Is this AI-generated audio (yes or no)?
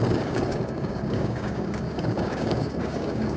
yes